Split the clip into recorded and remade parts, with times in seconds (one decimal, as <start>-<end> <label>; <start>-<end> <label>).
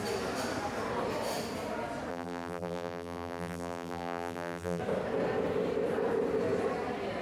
0.0-2.1 recorded; 2.1-4.8 remade; 4.8-7.2 recorded